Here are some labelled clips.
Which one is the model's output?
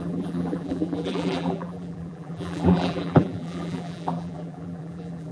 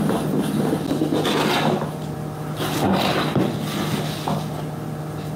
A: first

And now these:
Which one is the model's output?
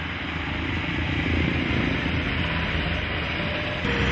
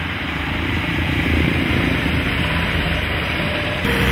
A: second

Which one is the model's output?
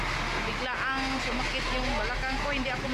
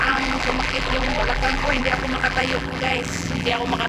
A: second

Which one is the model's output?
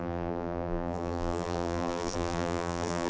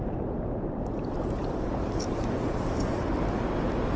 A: first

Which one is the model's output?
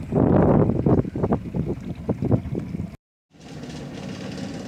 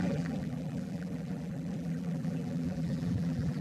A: second